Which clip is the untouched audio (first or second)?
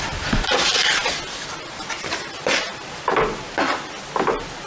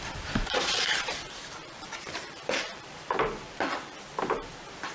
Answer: first